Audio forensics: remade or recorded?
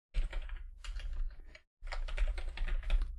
recorded